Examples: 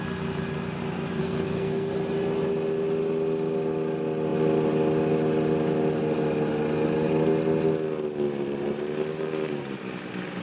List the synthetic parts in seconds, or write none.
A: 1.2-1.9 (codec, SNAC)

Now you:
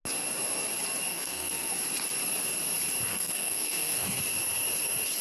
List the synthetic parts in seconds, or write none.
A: 1.1-1.7 (codec, SNAC); 3.1-4.2

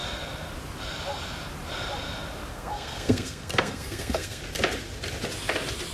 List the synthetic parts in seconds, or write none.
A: 2.5-4.4 (codec, SNAC)

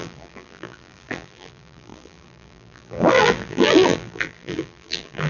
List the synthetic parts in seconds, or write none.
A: 0.0-5.3 (vocoder, BigVGAN v2)